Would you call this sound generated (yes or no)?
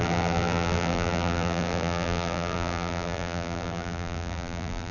yes